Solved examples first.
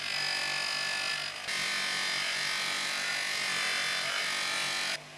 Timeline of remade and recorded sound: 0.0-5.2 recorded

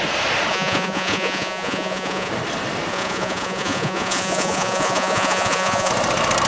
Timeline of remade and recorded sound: 0.0-0.5 recorded; 0.5-2.3 remade; 2.3-2.9 recorded; 2.9-5.9 remade; 5.9-6.5 recorded

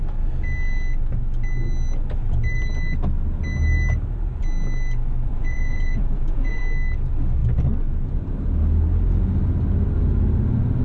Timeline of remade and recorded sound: 0.0-5.3 recorded; 5.3-6.6 remade; 6.6-10.8 recorded

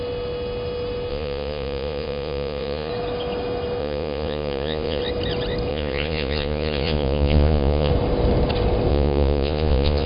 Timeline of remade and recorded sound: 0.0-1.1 recorded; 1.1-2.9 remade; 2.9-3.8 recorded; 3.8-5.0 remade; 5.0-5.7 recorded; 5.7-7.9 remade; 7.9-8.9 recorded; 8.9-10.1 remade

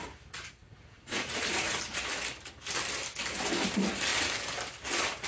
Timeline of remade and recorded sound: 0.0-0.6 recorded; 0.6-1.8 remade; 1.8-5.3 recorded

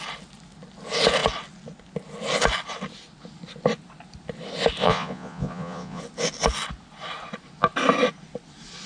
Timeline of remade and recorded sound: 0.0-4.8 recorded; 4.8-6.0 remade; 6.0-8.9 recorded

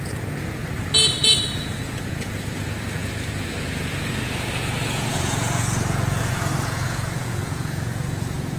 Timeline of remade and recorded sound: 0.0-0.6 remade; 0.6-1.5 recorded; 1.5-8.6 remade